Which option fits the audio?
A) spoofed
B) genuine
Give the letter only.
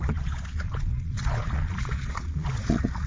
A